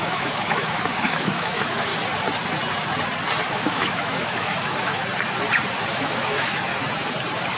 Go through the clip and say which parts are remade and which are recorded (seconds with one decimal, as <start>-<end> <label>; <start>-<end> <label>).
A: 0.0-1.9 remade; 1.9-3.5 recorded; 3.5-5.0 remade; 5.0-5.9 recorded; 5.9-6.7 remade; 6.7-7.6 recorded